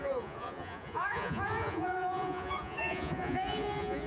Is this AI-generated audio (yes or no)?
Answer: yes